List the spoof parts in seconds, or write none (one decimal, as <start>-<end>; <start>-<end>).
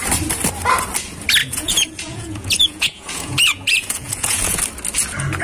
1.4-4.6